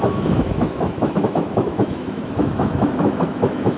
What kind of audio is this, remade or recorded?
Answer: remade